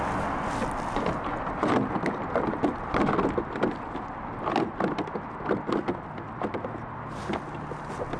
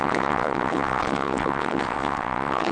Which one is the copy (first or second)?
second